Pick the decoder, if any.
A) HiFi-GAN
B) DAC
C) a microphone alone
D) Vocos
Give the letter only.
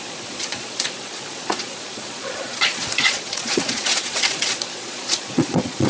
D